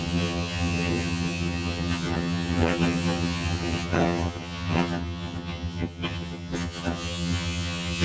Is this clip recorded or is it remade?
remade